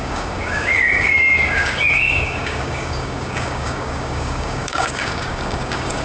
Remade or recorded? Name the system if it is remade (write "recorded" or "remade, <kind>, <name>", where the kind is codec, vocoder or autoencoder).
remade, codec, DAC